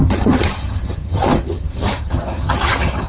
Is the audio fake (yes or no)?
yes